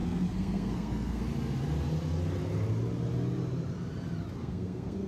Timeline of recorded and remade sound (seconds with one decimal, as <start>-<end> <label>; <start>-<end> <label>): 0.0-1.2 remade; 1.2-4.4 recorded; 4.4-5.1 remade